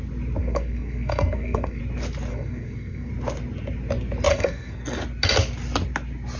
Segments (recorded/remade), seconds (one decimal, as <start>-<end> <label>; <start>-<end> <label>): 0.0-0.4 recorded; 0.4-1.8 remade; 1.8-2.3 recorded; 2.3-3.1 remade; 3.1-4.3 recorded; 4.3-5.0 remade; 5.0-6.4 recorded